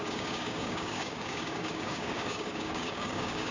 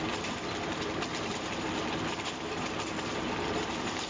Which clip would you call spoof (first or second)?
first